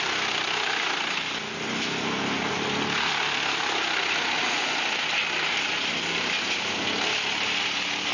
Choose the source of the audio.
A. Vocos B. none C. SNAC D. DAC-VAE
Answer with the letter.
B